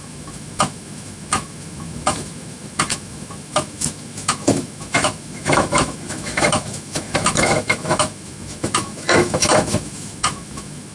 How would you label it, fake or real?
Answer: fake